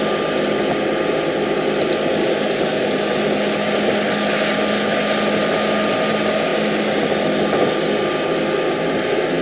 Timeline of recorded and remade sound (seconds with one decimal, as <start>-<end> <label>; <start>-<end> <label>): 0.0-2.2 recorded; 2.2-3.0 remade; 3.0-9.4 recorded